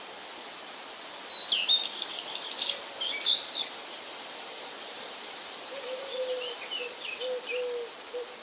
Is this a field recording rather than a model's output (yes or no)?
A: yes